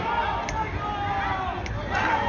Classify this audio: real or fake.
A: real